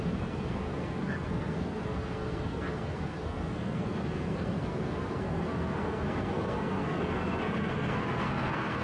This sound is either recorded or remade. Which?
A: remade